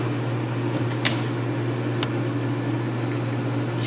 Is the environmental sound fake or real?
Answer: real